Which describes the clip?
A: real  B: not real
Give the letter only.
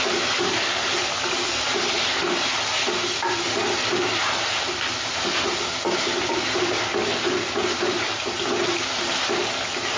A